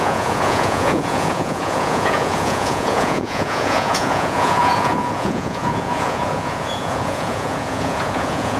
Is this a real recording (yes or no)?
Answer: no